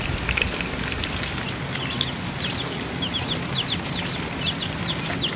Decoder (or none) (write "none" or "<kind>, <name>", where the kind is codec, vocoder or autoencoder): none